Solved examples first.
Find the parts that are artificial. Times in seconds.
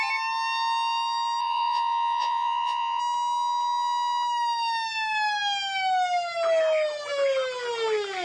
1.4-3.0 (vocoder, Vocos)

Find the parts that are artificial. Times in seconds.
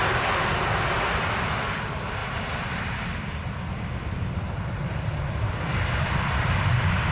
0.0-4.8 (vocoder, BigVGAN v2); 5.4-7.1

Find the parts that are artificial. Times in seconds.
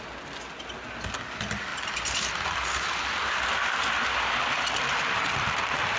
none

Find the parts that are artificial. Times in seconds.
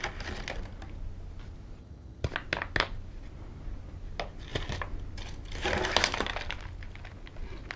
1.8-2.3 (vocoder, HiFi-GAN)